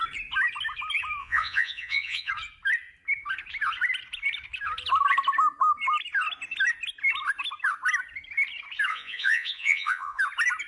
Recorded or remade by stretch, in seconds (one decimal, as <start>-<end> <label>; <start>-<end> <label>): 0.0-1.2 recorded; 1.2-2.3 remade; 2.3-8.9 recorded; 8.9-10.2 remade; 10.2-10.7 recorded